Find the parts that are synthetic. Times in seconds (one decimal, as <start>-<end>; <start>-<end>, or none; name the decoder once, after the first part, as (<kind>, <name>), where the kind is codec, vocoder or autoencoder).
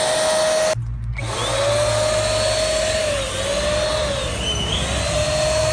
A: none